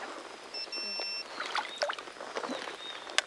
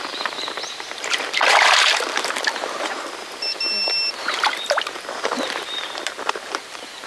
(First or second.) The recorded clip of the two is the first